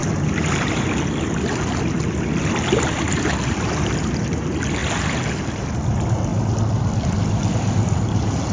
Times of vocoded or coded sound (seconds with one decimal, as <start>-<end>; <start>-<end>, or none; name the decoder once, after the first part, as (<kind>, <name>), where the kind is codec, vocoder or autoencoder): none